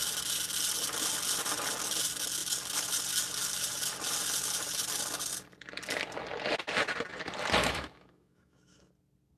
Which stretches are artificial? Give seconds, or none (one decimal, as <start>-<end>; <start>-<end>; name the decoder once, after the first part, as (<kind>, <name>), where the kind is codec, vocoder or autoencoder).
7.6-8.9 (autoencoder, DAC-VAE)